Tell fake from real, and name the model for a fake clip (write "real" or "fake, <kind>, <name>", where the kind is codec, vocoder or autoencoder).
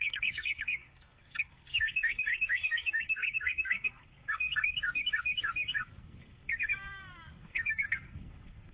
fake, codec, SNAC